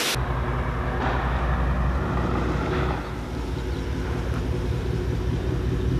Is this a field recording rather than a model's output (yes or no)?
yes